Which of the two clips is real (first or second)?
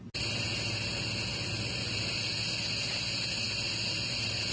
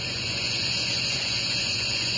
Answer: first